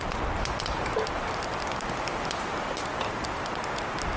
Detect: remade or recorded recorded